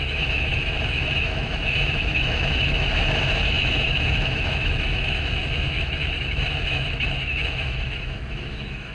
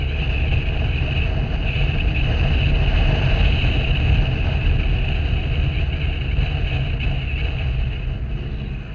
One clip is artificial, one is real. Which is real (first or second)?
second